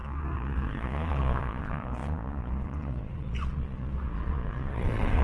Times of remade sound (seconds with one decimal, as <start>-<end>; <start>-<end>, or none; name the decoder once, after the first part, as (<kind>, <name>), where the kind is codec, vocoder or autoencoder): 0.0-5.2 (vocoder, Vocos)